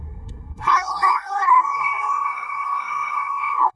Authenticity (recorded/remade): remade